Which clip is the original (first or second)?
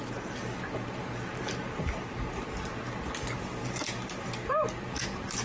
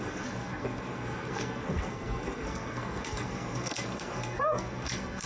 first